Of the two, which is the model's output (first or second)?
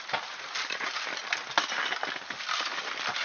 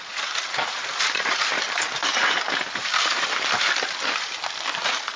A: second